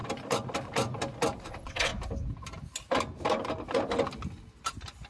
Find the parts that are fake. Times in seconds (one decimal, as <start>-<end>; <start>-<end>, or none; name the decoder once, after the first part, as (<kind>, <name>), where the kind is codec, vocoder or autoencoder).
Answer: 1.4-1.9 (vocoder, WaveNeXt)